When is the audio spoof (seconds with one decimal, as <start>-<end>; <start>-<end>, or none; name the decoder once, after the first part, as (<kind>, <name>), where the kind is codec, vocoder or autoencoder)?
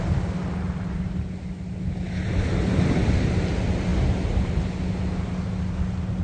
none